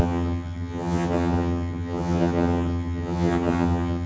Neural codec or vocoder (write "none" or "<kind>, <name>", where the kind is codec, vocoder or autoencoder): vocoder, HiFi-GAN